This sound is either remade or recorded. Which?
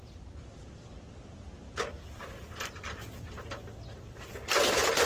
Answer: recorded